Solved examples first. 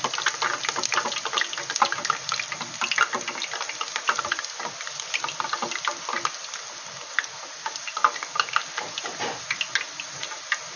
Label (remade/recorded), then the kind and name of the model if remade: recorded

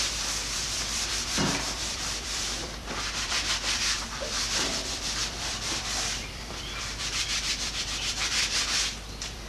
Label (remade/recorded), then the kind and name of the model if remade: remade, vocoder, BigVGAN v2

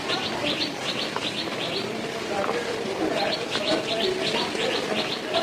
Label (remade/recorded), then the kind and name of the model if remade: remade, vocoder, BigVGAN v2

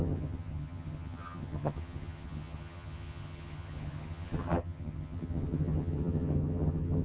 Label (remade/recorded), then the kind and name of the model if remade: remade, vocoder, HiFi-GAN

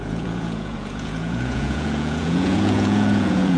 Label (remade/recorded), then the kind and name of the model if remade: remade, vocoder, Vocos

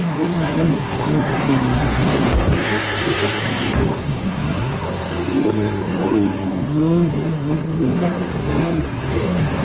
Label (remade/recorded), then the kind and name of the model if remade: remade, codec, SNAC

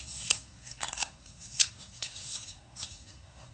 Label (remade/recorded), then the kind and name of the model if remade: remade, codec, SNAC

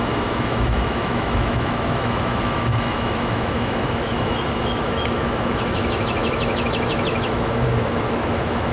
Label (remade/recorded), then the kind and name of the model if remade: remade, autoencoder, DAC-VAE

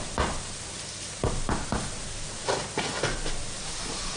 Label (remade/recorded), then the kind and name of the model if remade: recorded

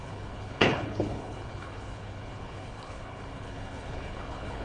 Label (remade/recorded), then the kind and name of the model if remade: remade, codec, HILCodec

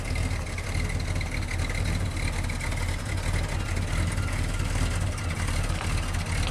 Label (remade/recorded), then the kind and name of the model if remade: recorded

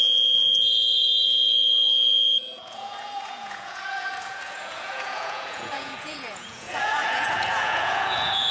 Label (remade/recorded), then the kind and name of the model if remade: remade, vocoder, Vocos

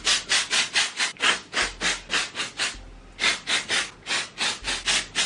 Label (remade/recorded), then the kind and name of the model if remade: recorded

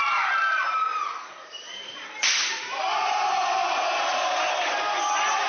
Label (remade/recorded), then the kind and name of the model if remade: recorded